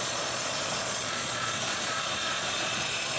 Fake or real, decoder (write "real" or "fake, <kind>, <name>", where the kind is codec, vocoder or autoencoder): fake, vocoder, Vocos